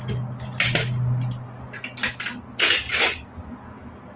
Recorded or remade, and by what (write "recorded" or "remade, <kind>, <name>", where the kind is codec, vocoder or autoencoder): recorded